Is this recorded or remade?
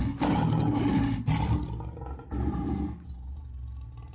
recorded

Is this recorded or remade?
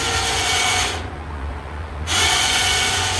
remade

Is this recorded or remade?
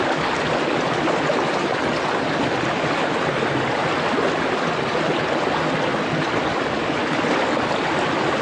recorded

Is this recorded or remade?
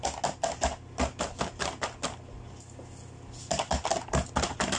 recorded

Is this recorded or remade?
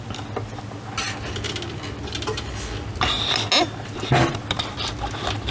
recorded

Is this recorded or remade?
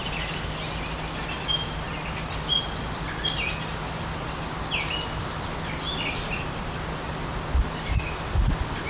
recorded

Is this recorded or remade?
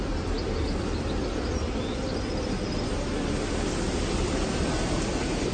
recorded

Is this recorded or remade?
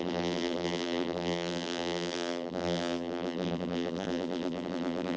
remade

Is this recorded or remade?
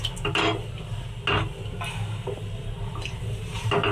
recorded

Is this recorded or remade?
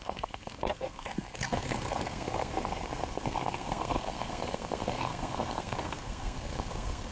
remade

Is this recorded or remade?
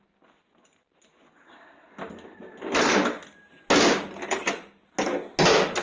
recorded